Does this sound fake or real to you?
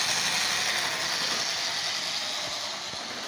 real